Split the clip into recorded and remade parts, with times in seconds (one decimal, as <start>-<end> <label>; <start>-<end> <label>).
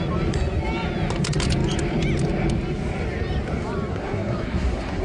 0.0-3.9 recorded; 3.9-5.0 remade